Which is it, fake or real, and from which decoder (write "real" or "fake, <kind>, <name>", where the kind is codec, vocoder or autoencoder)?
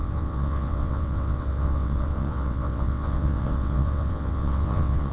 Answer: fake, vocoder, WaveNeXt